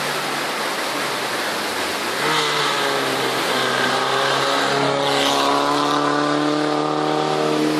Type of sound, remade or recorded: recorded